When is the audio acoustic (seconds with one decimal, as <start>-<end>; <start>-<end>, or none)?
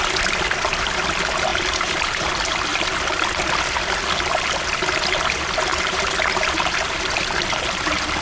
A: 0.0-1.5; 2.3-5.7; 6.6-8.2